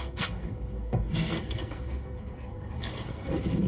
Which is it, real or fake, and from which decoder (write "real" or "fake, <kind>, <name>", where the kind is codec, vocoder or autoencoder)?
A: fake, codec, SNAC